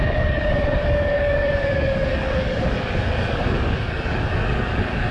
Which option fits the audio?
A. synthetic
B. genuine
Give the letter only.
A